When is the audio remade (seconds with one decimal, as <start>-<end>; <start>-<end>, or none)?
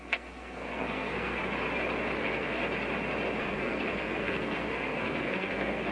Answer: 0.0-1.4; 2.2-2.6; 3.4-5.9